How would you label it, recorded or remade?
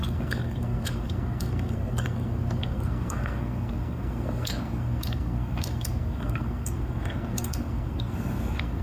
remade